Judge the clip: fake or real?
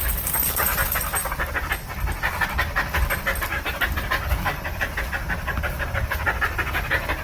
real